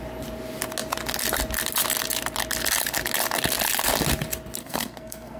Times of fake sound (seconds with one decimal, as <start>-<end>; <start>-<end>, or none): 4.6-5.4